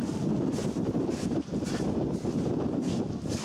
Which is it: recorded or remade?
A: recorded